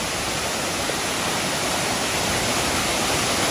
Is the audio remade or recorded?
recorded